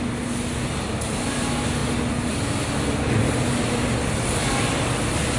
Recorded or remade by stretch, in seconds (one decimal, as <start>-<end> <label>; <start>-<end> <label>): 0.0-5.4 recorded